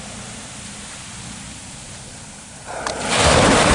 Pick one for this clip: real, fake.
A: real